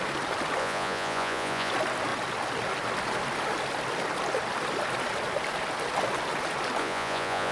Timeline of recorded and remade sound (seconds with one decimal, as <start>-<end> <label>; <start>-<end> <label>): 0.0-0.6 recorded; 0.6-1.7 remade; 1.7-6.8 recorded; 6.8-7.5 remade